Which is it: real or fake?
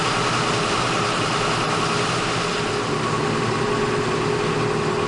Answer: real